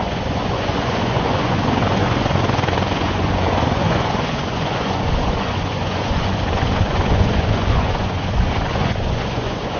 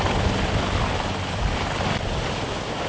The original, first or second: second